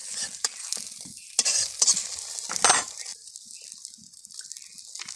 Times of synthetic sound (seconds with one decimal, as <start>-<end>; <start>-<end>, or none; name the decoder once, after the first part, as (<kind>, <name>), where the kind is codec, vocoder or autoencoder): none